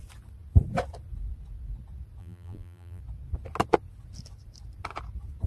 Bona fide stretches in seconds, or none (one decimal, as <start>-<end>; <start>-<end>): 0.0-2.2; 3.0-5.5